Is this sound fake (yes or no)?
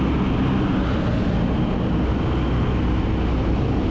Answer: no